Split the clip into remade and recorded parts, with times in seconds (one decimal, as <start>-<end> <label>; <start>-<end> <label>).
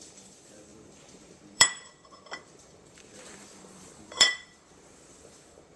0.0-5.8 remade